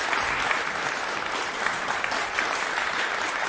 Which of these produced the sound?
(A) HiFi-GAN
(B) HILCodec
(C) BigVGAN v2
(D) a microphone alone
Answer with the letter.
C